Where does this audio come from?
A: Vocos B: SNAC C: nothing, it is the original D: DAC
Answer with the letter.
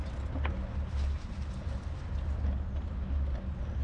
C